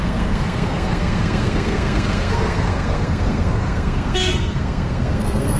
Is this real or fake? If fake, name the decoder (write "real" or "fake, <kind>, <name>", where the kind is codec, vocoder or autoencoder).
fake, codec, SNAC